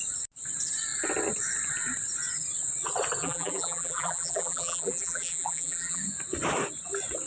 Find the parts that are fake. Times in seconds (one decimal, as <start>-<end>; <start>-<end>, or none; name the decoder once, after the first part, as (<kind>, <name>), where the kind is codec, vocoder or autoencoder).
3.2-6.0 (vocoder, BigVGAN v2)